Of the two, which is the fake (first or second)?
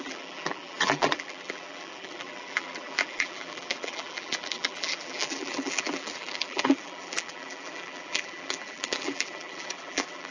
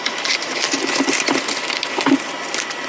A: first